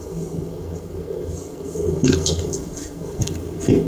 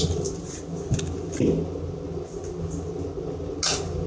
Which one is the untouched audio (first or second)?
second